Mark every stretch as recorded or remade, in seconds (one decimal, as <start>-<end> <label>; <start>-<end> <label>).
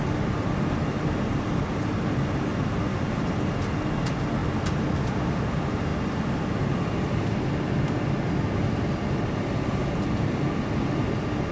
0.0-9.8 recorded; 9.8-10.4 remade; 10.4-11.5 recorded